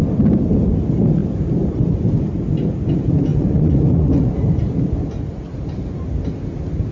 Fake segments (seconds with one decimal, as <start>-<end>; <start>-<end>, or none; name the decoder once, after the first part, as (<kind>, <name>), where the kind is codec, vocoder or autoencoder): 3.3-4.3 (vocoder, Vocos)